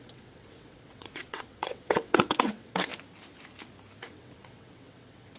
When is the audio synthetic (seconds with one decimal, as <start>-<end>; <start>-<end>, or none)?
0.0-2.9; 4.0-5.4